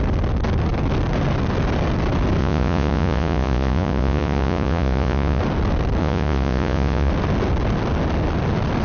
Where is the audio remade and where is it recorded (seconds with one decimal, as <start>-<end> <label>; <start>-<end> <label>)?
0.0-2.4 recorded; 2.4-5.4 remade; 5.4-6.0 recorded; 6.0-7.1 remade; 7.1-8.8 recorded